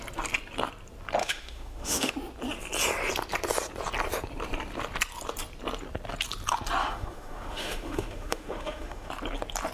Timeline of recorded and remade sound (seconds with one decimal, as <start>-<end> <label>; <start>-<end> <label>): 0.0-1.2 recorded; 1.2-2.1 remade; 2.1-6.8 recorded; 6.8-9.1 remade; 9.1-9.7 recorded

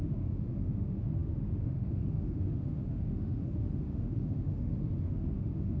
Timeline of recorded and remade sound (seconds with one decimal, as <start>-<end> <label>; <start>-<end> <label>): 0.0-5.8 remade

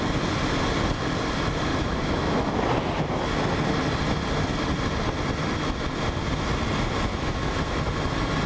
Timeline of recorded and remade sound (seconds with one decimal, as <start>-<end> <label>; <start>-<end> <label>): 0.0-1.7 recorded; 1.7-2.5 remade; 2.5-7.1 recorded; 7.1-7.9 remade; 7.9-8.5 recorded

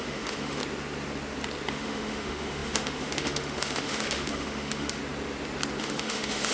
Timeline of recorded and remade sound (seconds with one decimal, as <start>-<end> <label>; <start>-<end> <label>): 0.0-0.6 remade; 0.6-1.7 recorded; 1.7-5.0 remade; 5.0-5.8 recorded; 5.8-6.5 remade

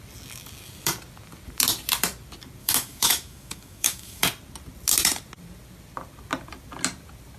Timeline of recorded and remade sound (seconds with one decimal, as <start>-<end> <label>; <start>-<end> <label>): 0.0-2.6 recorded; 2.6-4.2 remade; 4.2-7.4 recorded

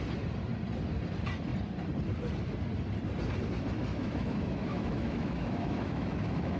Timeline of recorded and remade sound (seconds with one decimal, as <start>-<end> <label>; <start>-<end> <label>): 0.0-3.9 recorded; 3.9-6.6 remade

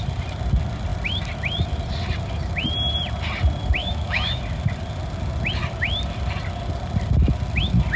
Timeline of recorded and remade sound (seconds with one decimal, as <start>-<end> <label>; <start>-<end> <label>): 0.0-3.8 recorded; 3.8-4.4 remade; 4.4-8.0 recorded